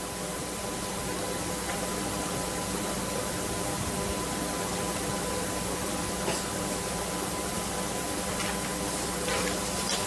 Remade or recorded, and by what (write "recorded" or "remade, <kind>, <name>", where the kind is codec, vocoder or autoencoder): recorded